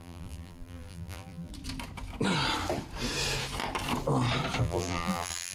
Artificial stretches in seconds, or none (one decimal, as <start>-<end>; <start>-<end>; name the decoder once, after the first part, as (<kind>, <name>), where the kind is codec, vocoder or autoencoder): 0.0-1.5 (vocoder, BigVGAN v2); 4.6-5.5